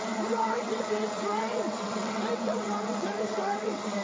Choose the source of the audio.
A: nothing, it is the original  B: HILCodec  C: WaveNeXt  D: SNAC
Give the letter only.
C